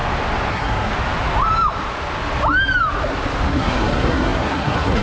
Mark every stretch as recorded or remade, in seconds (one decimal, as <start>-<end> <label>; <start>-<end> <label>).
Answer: 0.0-0.5 recorded; 0.5-0.9 remade; 0.9-3.5 recorded; 3.5-5.0 remade